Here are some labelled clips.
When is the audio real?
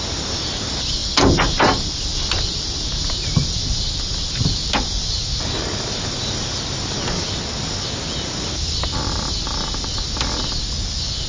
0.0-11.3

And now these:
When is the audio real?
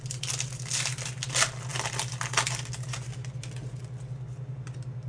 0.0-5.1